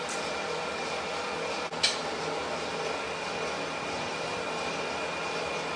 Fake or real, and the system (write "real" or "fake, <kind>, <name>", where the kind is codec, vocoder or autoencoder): real